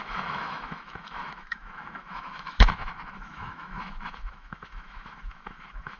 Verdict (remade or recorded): remade